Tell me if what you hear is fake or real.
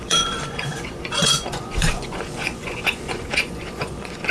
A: fake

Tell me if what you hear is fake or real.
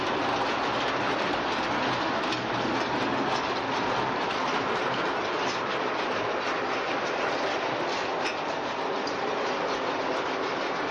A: real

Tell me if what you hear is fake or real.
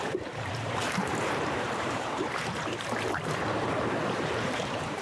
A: fake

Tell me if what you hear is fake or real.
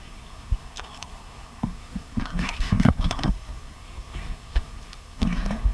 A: fake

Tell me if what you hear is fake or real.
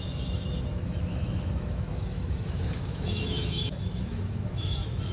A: fake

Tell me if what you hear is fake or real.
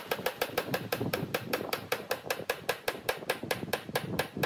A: fake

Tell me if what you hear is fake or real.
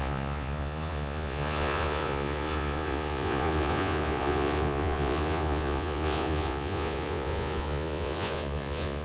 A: fake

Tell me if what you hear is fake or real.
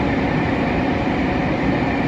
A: real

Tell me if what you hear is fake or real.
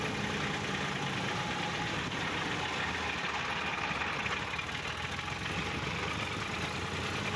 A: real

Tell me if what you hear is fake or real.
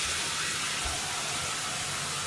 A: real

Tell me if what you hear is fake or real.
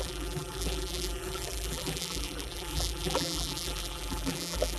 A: fake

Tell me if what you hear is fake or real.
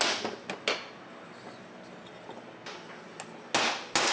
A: real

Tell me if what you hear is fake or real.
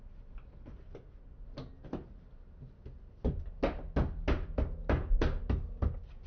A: real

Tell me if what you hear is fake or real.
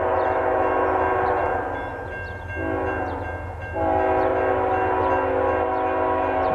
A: real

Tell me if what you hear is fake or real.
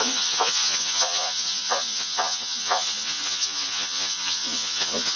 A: fake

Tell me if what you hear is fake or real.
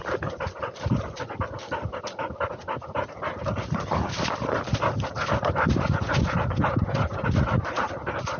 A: real